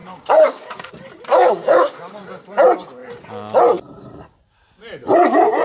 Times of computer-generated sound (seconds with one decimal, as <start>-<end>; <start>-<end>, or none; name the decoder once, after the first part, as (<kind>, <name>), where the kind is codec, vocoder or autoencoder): 0.0-0.9 (codec, DAC); 1.3-2.2